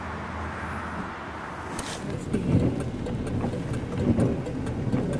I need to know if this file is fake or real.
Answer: real